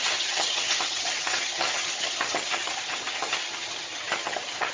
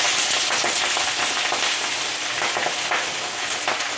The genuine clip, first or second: second